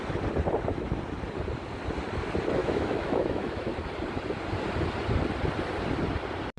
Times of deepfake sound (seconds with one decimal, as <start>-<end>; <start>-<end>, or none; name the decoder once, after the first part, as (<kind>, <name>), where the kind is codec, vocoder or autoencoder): 2.6-3.7 (autoencoder, DAC-VAE)